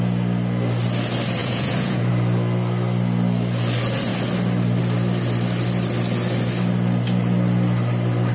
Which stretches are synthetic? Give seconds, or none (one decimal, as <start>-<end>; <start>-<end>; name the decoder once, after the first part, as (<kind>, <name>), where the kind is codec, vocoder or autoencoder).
1.4-2.1 (vocoder, Vocos)